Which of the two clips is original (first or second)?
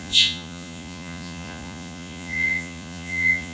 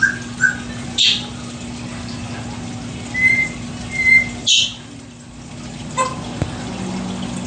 second